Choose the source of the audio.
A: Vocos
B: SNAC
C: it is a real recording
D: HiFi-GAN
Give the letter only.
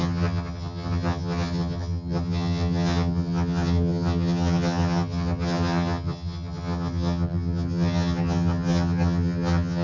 D